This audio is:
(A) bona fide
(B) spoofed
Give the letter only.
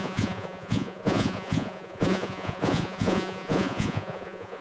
B